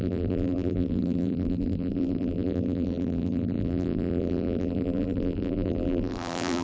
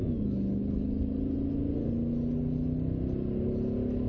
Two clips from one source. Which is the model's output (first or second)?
first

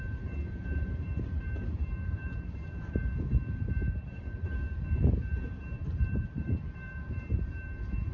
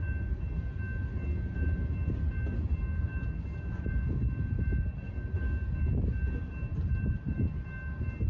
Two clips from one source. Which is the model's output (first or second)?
first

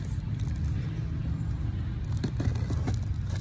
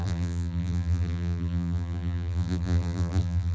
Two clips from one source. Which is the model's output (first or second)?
second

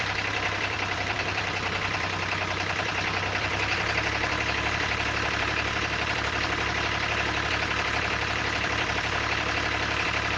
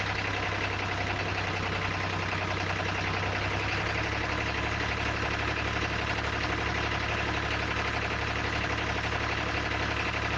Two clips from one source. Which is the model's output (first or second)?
first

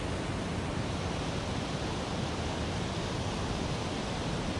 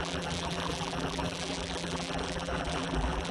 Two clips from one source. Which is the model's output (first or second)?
second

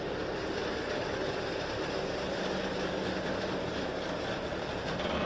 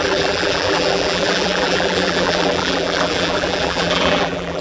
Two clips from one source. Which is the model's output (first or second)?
second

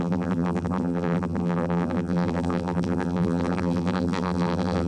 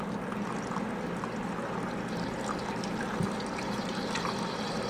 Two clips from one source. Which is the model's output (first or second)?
first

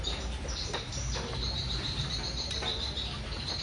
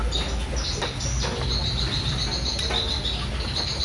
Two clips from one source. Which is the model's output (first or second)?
first